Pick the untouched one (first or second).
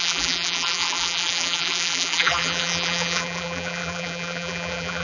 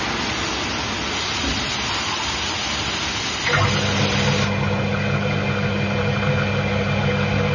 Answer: second